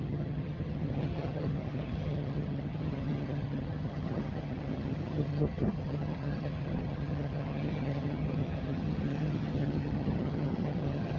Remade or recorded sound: remade